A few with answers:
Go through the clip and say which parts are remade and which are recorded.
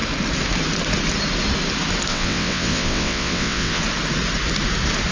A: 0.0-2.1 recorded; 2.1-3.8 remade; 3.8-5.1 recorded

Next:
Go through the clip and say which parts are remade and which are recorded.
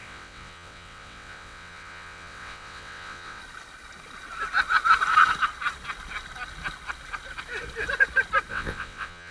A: 0.0-3.4 remade; 3.4-8.5 recorded; 8.5-9.3 remade